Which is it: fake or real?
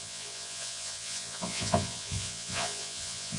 fake